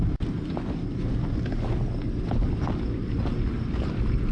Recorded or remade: recorded